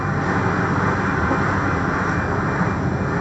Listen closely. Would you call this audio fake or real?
real